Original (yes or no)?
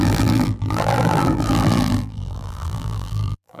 no